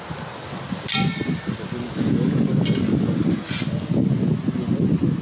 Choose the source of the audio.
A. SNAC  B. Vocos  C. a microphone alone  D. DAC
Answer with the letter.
C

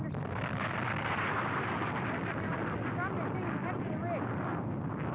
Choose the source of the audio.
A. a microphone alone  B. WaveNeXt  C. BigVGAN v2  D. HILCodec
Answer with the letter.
A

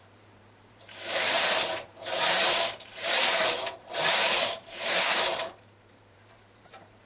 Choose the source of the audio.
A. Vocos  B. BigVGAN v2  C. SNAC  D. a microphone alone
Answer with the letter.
B